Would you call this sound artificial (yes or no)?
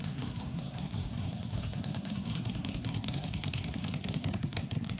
yes